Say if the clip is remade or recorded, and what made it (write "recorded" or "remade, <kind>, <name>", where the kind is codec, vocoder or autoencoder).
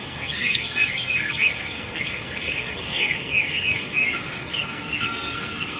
remade, codec, SNAC